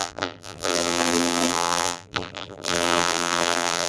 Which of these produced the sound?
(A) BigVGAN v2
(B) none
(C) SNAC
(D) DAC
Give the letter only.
A